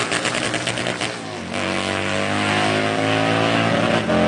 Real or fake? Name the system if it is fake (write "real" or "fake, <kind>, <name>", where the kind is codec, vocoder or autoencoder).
real